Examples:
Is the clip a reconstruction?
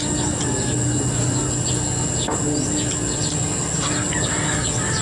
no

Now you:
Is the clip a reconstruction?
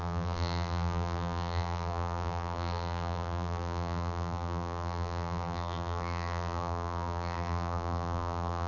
yes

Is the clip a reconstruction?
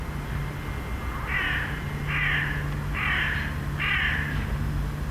no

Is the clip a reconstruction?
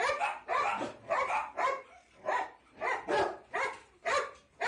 yes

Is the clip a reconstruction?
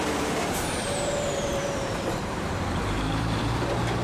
yes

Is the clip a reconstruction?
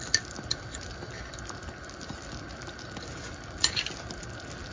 no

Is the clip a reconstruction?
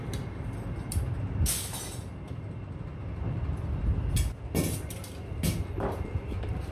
no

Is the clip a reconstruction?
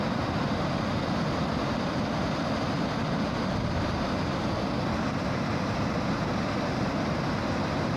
no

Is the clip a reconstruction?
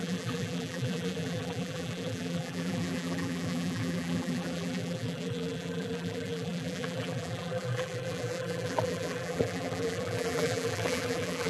yes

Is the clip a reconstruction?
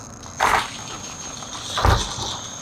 no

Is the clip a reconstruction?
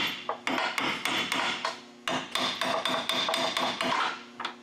no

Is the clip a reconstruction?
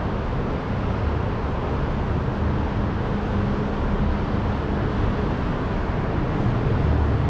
no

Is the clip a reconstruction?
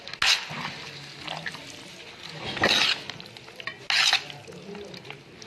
no